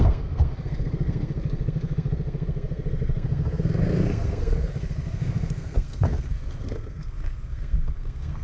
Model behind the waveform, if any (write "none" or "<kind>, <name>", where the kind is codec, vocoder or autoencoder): codec, SNAC